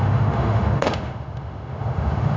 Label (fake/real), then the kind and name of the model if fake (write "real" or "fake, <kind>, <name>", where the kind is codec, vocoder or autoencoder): fake, autoencoder, DAC-VAE